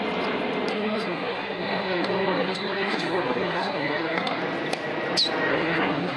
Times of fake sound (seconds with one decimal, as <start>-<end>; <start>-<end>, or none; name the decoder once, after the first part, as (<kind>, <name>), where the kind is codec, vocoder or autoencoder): 0.7-4.4 (codec, SNAC); 5.5-6.2